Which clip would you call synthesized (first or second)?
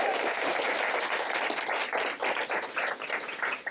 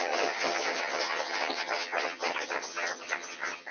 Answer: second